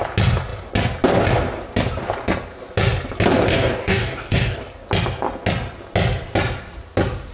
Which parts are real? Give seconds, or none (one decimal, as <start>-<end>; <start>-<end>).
0.0-3.5; 4.6-7.3